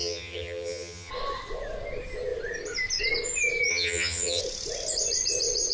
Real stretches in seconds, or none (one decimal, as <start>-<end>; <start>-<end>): 1.1-3.7; 4.4-5.7